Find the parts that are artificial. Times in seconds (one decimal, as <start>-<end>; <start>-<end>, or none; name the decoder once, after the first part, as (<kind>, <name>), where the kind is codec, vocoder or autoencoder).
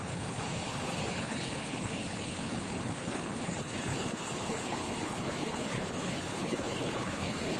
0.0-7.6 (codec, HILCodec)